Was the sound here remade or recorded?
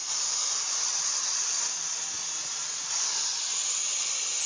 recorded